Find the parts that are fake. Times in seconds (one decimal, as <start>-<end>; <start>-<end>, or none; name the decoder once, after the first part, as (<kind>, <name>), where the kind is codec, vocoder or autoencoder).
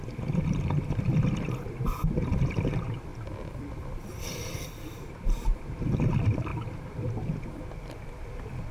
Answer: 3.1-4.9 (vocoder, BigVGAN v2); 6.5-7.8